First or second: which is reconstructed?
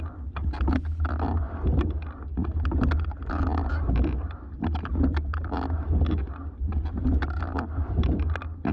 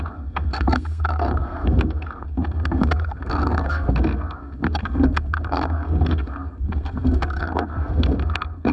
second